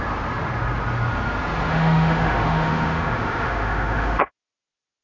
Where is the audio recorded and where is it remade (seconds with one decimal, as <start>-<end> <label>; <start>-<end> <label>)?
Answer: 0.0-1.7 recorded; 1.7-4.3 remade; 4.3-5.0 recorded